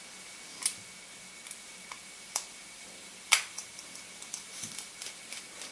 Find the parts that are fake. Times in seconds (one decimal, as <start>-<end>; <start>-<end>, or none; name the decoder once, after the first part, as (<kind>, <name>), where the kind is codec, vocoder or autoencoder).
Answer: 2.0-5.7 (vocoder, BigVGAN v2)